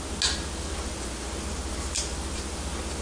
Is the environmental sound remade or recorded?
recorded